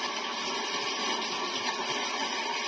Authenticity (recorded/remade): recorded